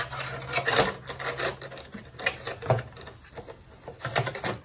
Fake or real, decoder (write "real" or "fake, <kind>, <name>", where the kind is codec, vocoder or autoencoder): real